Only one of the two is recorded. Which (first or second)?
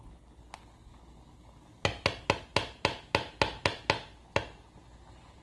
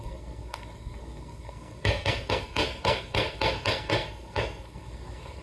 first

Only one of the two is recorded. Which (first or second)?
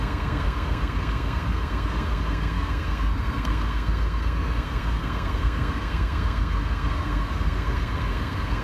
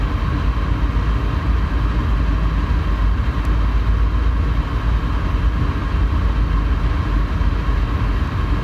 second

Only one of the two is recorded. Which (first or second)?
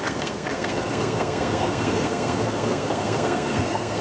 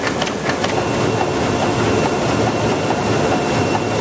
second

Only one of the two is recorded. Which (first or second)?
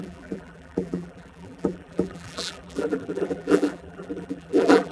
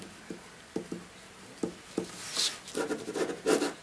second